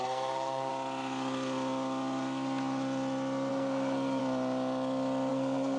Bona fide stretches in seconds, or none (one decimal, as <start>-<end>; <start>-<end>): 0.7-3.5; 4.2-5.3